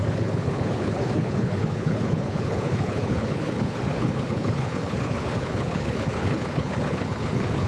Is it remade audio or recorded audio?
remade